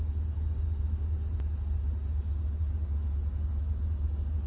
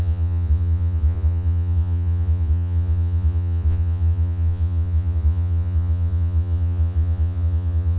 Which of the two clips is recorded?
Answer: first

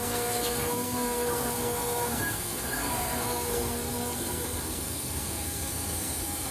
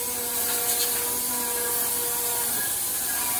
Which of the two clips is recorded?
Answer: second